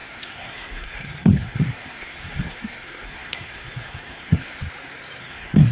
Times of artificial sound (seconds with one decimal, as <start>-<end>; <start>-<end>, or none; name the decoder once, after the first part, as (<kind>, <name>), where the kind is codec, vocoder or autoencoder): 0.0-4.6 (codec, SNAC); 5.2-5.7